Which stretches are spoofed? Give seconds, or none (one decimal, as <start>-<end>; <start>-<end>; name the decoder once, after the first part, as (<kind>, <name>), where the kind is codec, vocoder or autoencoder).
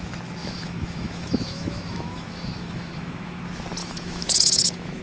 0.4-3.4 (autoencoder, DAC-VAE); 3.8-5.0